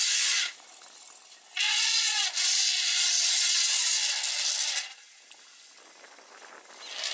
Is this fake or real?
real